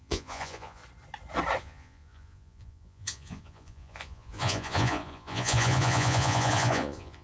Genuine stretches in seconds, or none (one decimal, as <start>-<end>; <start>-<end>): 0.8-1.6